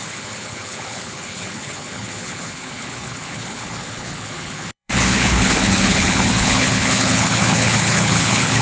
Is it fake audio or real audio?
fake